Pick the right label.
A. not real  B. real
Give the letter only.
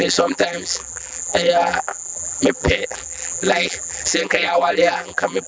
A